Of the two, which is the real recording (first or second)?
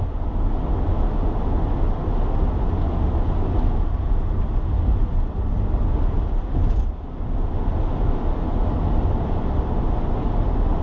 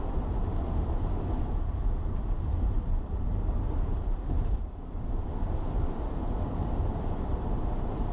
first